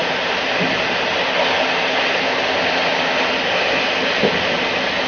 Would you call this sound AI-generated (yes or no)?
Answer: no